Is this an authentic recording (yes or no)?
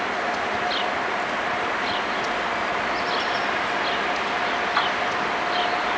yes